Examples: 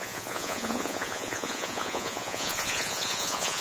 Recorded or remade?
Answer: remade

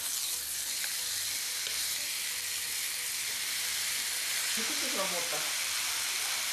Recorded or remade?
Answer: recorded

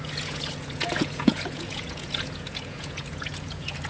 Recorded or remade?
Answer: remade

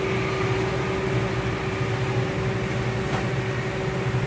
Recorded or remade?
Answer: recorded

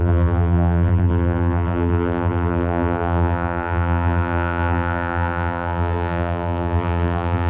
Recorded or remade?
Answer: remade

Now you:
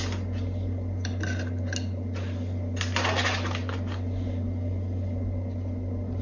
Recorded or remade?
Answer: recorded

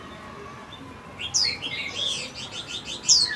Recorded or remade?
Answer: recorded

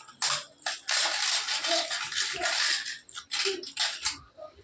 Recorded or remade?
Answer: recorded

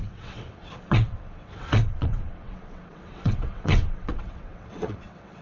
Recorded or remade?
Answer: remade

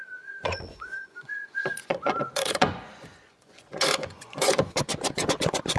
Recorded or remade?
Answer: remade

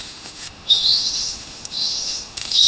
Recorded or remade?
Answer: remade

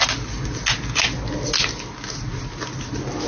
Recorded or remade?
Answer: recorded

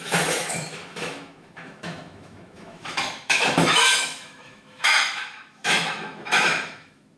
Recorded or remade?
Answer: remade